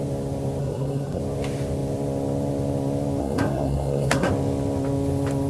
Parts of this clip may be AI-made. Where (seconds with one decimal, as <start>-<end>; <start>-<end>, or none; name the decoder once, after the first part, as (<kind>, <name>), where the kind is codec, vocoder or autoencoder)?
0.6-1.2 (codec, SNAC); 3.2-4.3

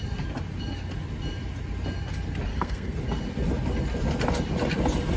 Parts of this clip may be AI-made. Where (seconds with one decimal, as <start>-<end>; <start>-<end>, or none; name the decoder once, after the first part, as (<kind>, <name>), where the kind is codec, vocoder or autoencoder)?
2.5-3.0 (codec, SNAC)

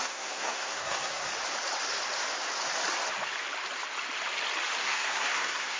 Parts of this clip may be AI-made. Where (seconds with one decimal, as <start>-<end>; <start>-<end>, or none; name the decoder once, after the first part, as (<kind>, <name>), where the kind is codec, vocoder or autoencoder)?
0.0-1.3 (codec, SNAC); 4.8-5.8

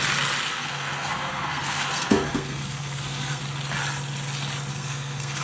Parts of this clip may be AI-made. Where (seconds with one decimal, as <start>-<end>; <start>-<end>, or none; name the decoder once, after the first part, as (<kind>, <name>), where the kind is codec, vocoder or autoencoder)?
0.5-3.4 (codec, SNAC); 4.7-5.4

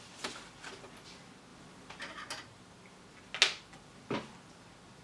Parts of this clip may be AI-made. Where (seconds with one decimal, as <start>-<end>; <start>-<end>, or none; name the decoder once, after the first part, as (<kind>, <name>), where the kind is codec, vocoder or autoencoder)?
none

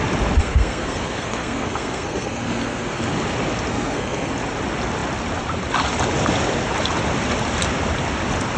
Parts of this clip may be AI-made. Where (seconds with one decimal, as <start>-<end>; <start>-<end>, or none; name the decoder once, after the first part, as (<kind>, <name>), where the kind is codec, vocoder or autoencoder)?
0.4-3.0 (codec, SNAC); 3.7-4.3

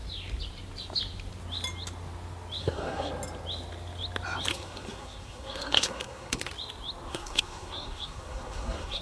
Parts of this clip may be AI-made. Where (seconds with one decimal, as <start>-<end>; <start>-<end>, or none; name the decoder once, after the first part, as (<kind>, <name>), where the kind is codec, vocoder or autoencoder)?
2.6-3.1 (codec, SNAC); 4.5-6.5; 7.1-9.0